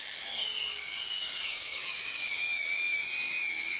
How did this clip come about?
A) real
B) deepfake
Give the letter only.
B